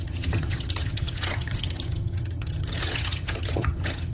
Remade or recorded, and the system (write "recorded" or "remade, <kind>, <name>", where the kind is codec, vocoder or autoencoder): remade, vocoder, HiFi-GAN